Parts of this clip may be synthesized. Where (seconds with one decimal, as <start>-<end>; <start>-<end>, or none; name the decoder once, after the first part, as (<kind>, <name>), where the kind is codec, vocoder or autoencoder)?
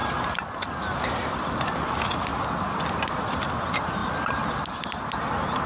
2.3-3.5 (vocoder, BigVGAN v2)